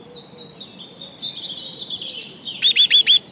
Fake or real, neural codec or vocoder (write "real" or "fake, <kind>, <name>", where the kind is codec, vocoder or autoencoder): real